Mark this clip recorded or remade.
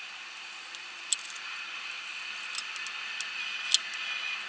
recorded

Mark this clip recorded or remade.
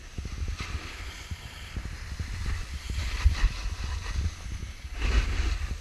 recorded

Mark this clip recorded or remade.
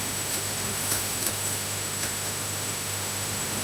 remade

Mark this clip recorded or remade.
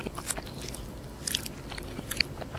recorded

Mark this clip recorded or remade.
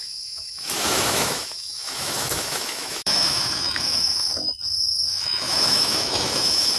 remade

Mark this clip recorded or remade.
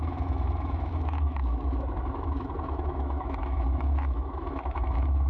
remade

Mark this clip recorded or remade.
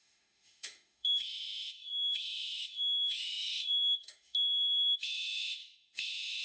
remade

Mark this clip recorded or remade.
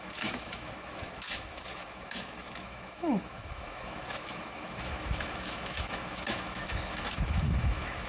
remade